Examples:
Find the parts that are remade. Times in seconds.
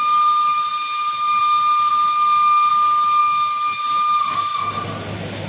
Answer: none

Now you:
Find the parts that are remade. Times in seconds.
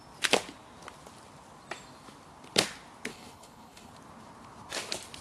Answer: 3.1-3.9 (codec, HILCodec)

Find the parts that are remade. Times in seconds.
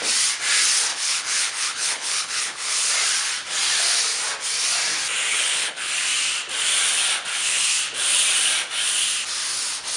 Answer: 0.9-2.9 (codec, HILCodec); 5.3-5.9; 7.3-7.8